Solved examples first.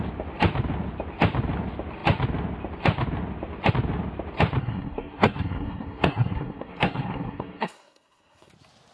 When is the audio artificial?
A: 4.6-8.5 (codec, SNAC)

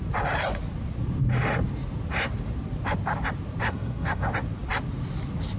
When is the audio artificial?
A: 3.6-4.3 (codec, SNAC)